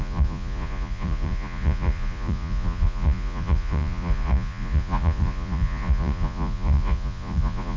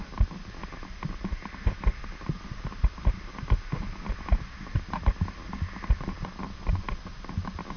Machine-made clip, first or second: first